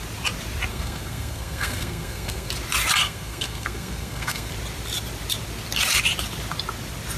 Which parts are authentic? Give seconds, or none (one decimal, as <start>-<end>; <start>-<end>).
0.0-0.7; 2.5-3.0; 4.5-7.2